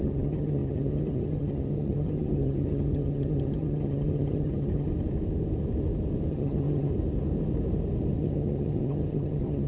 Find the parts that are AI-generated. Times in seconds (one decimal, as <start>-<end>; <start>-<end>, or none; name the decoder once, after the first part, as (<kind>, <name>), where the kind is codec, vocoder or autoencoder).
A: 0.0-4.9 (vocoder, HiFi-GAN); 6.3-6.9; 8.2-9.7